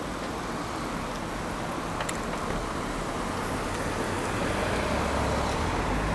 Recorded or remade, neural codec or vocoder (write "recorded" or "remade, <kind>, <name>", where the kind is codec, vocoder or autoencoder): recorded